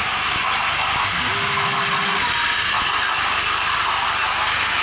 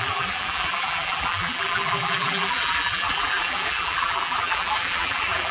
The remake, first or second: second